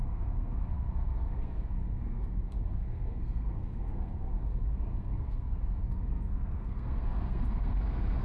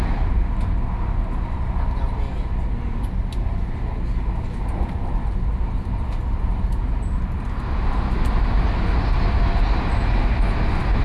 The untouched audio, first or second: second